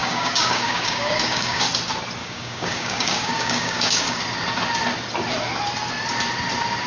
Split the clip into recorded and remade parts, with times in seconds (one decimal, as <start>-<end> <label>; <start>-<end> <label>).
0.0-1.6 remade; 1.6-2.2 recorded; 2.2-4.2 remade; 4.2-6.9 recorded